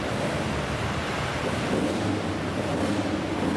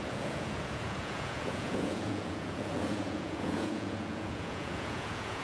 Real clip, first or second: first